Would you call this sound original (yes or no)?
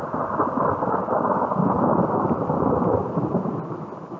yes